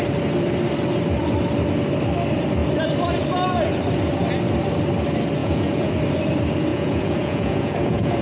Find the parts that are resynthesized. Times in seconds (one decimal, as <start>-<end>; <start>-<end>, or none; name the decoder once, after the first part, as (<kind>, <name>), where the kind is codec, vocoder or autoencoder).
5.4-5.9 (vocoder, Vocos); 6.7-8.2